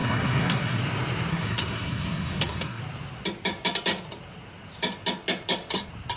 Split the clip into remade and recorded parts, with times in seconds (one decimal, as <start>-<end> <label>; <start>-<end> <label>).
0.0-0.8 remade; 0.8-1.3 recorded; 1.3-2.8 remade; 2.8-6.2 recorded